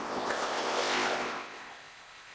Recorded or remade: remade